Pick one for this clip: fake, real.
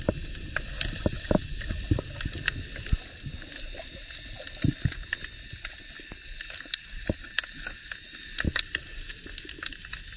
real